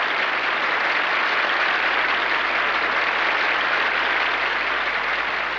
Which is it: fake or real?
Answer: real